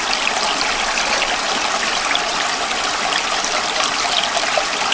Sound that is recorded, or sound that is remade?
recorded